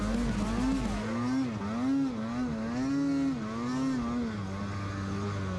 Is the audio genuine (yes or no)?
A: yes